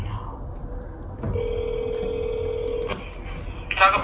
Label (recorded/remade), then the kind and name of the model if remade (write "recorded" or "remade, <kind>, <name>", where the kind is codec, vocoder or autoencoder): recorded